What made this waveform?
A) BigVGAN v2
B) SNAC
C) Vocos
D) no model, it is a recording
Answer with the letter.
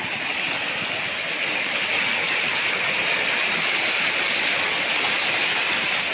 D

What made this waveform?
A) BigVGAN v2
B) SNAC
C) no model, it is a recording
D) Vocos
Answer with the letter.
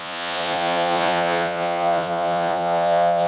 D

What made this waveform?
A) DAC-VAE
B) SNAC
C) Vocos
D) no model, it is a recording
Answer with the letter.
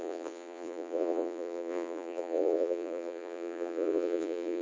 C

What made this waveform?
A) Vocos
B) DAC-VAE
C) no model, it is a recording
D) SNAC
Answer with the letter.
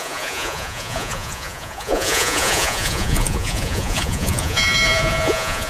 A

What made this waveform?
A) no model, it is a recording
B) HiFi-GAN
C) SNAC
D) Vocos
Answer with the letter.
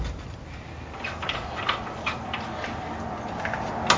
A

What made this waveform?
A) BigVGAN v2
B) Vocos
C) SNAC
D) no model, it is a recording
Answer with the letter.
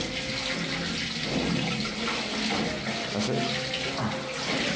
D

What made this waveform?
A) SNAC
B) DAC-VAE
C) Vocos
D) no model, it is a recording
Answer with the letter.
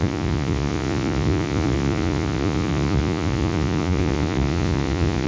C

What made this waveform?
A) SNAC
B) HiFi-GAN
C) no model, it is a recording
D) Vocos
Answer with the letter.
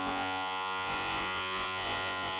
D